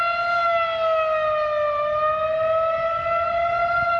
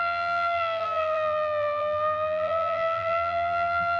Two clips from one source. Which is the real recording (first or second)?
first